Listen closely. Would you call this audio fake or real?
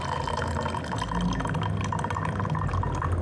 real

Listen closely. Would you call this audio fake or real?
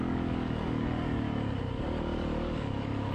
fake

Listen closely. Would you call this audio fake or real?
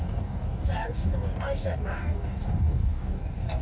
fake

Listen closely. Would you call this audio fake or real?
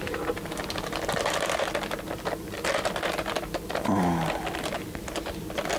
fake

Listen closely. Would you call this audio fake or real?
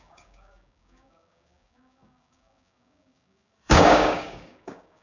fake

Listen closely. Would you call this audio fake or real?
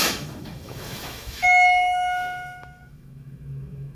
fake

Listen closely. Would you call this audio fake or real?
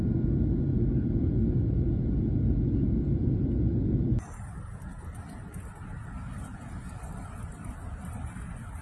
real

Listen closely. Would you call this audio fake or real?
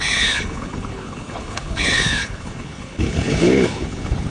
fake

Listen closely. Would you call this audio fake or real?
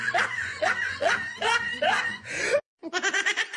fake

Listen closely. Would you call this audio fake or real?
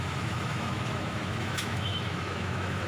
fake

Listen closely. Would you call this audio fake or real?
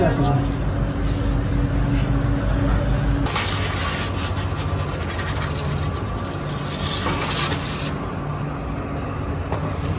real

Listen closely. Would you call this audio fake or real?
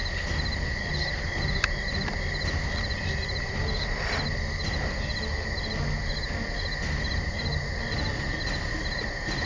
real